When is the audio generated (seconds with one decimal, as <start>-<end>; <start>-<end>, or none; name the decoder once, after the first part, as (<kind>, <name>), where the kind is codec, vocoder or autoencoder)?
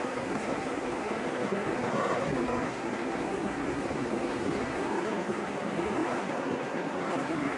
0.0-7.6 (codec, SNAC)